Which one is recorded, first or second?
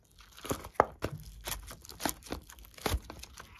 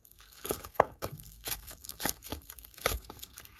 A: first